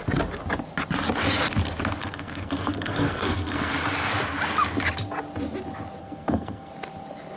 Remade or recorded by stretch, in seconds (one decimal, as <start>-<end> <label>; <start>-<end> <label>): 0.0-2.0 recorded; 2.0-3.7 remade; 3.7-6.0 recorded; 6.0-6.7 remade; 6.7-7.4 recorded

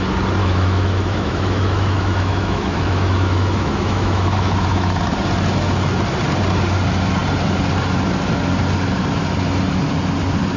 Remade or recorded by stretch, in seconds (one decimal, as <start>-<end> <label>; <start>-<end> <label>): 0.0-0.4 recorded; 0.4-5.0 remade; 5.0-10.6 recorded

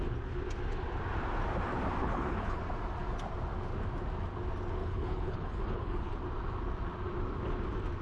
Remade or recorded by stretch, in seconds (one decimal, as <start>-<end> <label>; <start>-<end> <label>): 0.0-2.0 recorded; 2.0-2.6 remade; 2.6-4.8 recorded; 4.8-6.1 remade; 6.1-8.0 recorded